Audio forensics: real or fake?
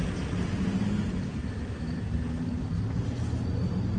real